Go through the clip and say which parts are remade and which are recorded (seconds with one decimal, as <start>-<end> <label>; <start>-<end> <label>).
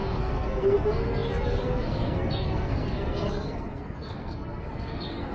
0.0-5.3 remade